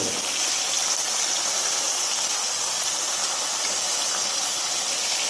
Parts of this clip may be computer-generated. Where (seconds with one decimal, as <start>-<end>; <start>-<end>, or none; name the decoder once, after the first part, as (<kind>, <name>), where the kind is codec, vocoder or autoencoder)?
0.8-2.1 (vocoder, BigVGAN v2); 3.2-4.6